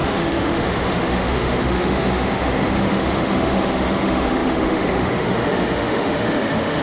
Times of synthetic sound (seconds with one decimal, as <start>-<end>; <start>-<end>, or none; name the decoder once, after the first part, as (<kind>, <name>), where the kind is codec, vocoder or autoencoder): 0.0-6.8 (autoencoder, DAC-VAE)